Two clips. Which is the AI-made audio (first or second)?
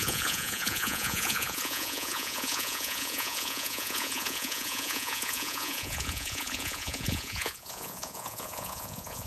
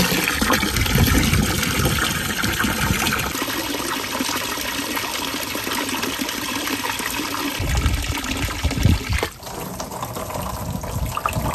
first